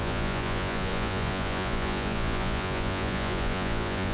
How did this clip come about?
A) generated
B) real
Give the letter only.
A